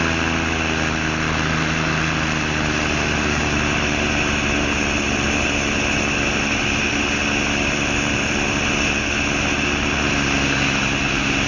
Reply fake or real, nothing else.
real